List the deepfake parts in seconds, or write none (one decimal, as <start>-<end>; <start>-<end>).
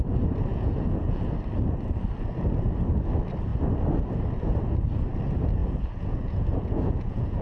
0.5-1.3; 5.6-7.4